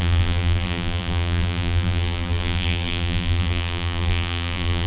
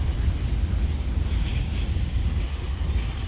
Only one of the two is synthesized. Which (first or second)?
first